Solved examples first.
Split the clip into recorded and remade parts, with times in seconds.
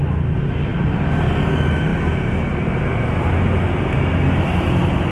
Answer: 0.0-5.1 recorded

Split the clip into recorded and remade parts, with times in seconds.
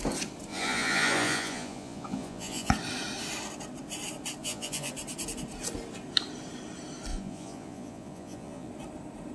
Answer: 0.0-0.5 recorded; 0.5-2.7 remade; 2.7-4.4 recorded; 4.4-4.9 remade; 4.9-7.1 recorded; 7.1-8.7 remade; 8.7-9.3 recorded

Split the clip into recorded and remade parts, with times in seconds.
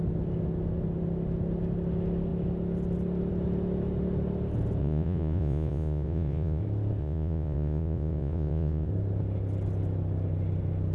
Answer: 0.0-4.8 recorded; 4.8-6.6 remade; 6.6-7.0 recorded; 7.0-8.9 remade; 8.9-10.9 recorded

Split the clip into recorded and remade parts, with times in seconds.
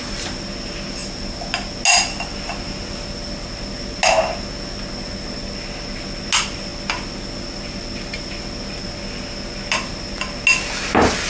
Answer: 0.0-11.3 recorded